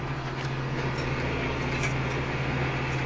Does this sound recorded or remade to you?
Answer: recorded